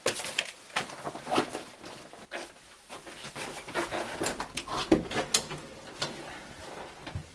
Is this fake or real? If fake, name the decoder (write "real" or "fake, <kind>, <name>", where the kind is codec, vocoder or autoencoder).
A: real